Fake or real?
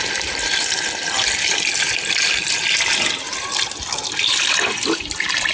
real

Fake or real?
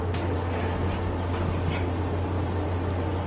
real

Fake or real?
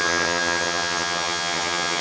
fake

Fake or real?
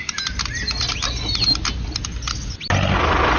real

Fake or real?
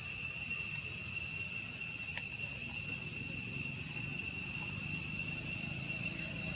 real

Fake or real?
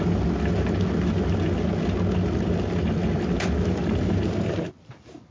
real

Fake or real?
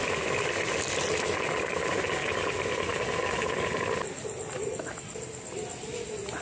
real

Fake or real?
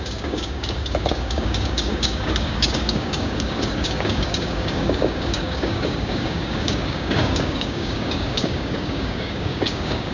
fake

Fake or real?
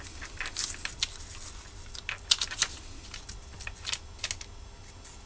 real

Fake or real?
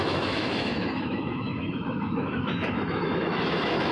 fake